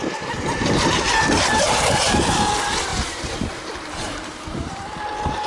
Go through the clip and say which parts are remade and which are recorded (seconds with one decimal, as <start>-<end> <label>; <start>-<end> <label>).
0.0-2.1 remade; 2.1-2.9 recorded; 2.9-5.0 remade; 5.0-5.5 recorded